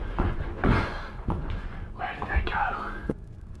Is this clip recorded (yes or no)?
no